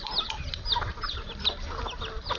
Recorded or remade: remade